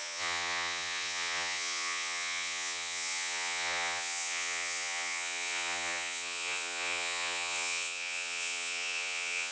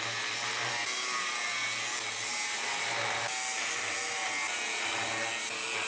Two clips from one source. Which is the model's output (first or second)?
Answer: first